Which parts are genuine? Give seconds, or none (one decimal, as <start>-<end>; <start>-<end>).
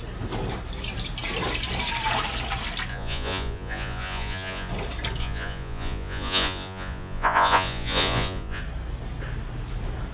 0.0-2.9; 4.7-5.2; 8.6-10.1